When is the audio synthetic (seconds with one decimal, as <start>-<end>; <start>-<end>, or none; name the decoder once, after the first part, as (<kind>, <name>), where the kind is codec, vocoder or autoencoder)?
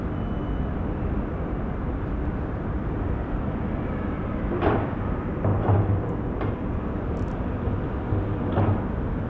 0.4-5.1 (vocoder, BigVGAN v2)